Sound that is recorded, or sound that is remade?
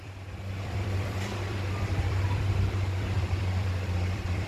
remade